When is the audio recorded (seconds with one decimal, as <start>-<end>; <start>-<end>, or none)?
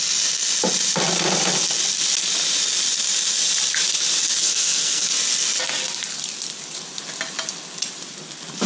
0.0-4.4; 5.1-8.7